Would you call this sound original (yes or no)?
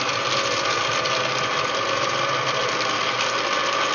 yes